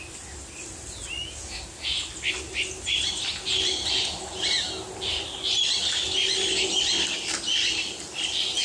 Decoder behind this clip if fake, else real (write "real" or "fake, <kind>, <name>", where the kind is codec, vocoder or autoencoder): real